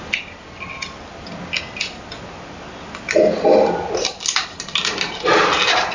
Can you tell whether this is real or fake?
real